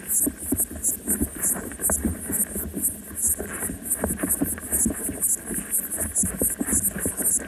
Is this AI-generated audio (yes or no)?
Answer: no